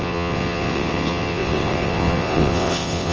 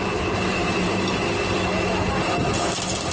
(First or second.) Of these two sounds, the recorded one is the second